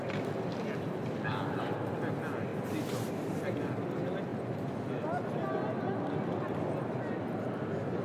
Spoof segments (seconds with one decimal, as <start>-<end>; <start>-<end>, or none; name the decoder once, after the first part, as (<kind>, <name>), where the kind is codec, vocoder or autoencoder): 0.5-1.9 (vocoder, BigVGAN v2)